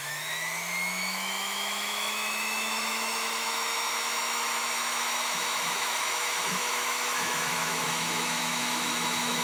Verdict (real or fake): fake